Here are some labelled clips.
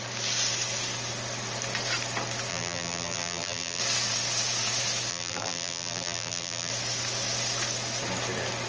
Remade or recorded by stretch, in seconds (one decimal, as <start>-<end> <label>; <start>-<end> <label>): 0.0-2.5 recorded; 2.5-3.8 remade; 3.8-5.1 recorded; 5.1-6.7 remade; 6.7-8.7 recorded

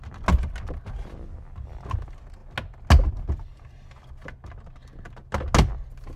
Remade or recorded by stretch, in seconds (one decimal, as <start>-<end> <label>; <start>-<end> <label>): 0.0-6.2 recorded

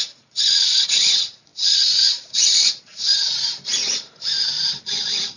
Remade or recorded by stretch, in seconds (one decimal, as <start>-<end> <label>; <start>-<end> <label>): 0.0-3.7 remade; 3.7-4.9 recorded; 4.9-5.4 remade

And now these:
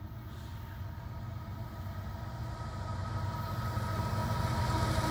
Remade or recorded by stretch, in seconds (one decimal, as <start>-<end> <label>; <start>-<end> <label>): 0.0-4.2 recorded; 4.2-5.1 remade

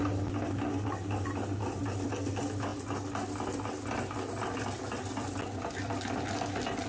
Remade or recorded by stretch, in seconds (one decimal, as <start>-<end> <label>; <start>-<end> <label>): 0.0-6.9 recorded

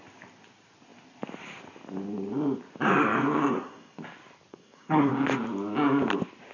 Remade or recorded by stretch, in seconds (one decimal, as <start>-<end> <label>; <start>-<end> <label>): 0.0-3.5 recorded; 3.5-4.0 remade; 4.0-4.5 recorded; 4.5-5.1 remade; 5.1-6.5 recorded